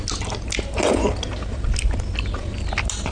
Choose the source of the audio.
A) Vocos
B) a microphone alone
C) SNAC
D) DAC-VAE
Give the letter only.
B